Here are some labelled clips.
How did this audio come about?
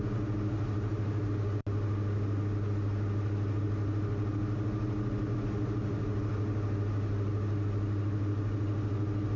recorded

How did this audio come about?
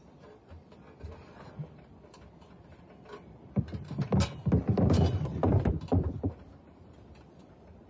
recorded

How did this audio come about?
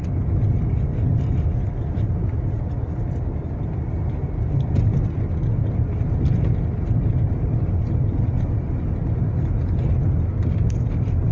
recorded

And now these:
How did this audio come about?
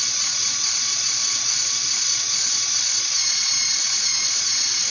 recorded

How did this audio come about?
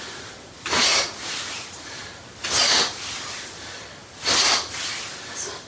recorded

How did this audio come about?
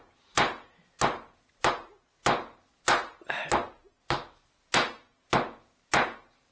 recorded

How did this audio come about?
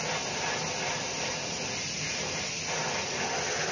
recorded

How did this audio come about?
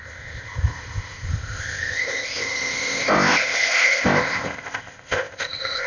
remade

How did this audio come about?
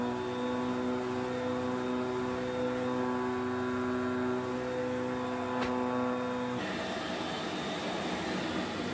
recorded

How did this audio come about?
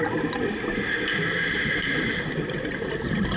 recorded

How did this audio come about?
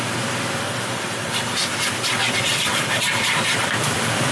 remade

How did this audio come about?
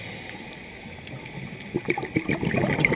recorded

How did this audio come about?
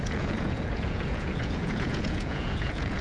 remade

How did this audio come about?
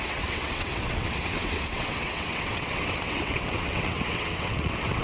remade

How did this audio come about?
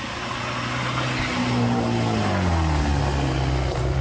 recorded